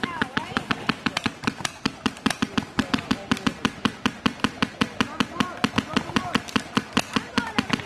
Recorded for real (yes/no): yes